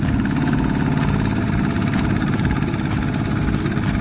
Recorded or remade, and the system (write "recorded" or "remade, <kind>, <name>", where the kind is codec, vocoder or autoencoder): recorded